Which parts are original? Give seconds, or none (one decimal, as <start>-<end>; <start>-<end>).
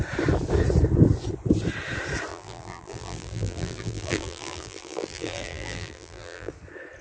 0.0-2.3; 6.5-7.0